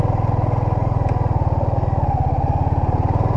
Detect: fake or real real